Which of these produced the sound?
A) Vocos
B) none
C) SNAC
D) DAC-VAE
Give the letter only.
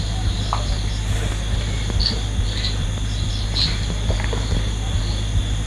B